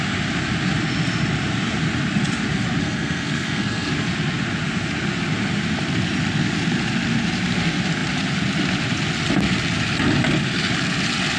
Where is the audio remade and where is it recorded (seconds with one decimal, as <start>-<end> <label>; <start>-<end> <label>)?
0.0-2.8 recorded; 2.8-3.9 remade; 3.9-11.4 recorded